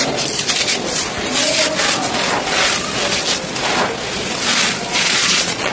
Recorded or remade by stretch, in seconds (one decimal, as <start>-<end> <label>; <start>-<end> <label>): 0.0-4.9 recorded; 4.9-5.7 remade